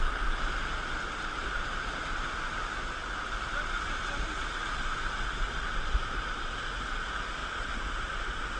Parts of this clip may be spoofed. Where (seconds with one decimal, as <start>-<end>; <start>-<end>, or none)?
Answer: none